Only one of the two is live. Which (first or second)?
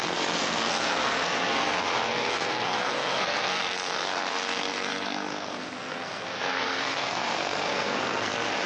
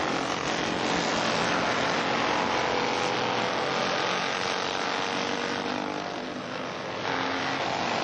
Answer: second